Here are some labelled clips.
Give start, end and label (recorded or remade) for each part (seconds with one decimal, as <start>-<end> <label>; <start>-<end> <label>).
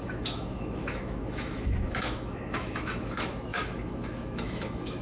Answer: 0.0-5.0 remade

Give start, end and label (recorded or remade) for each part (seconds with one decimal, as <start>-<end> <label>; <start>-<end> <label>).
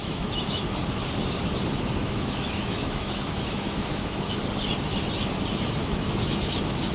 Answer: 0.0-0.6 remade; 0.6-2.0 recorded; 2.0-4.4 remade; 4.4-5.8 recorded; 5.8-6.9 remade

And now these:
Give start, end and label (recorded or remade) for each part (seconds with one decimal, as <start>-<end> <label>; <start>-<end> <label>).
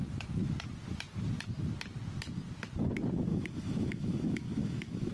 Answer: 0.0-3.3 recorded; 3.3-5.1 remade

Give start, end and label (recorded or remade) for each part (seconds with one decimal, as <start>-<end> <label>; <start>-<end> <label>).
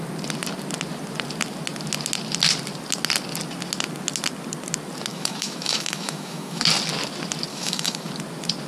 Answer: 0.0-5.1 recorded; 5.1-6.6 remade; 6.6-7.5 recorded; 7.5-8.1 remade; 8.1-8.7 recorded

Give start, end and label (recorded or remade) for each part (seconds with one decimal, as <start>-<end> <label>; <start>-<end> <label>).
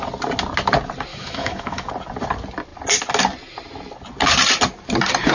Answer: 0.0-1.1 recorded; 1.1-1.9 remade; 1.9-5.3 recorded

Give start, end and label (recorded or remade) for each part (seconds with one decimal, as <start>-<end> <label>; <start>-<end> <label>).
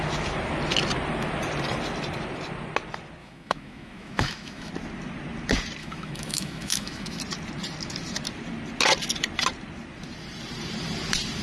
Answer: 0.0-3.2 recorded; 3.2-4.7 remade; 4.7-5.8 recorded; 5.8-7.2 remade; 7.2-11.4 recorded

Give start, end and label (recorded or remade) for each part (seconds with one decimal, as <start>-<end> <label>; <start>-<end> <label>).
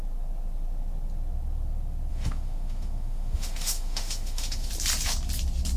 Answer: 0.0-2.1 recorded; 2.1-4.7 remade; 4.7-5.8 recorded